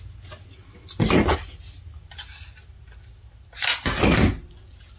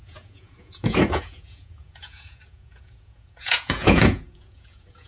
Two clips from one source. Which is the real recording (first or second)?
first